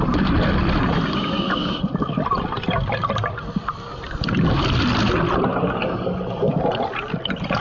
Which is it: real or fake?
fake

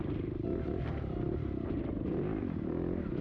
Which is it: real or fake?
fake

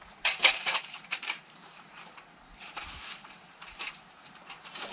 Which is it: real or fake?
fake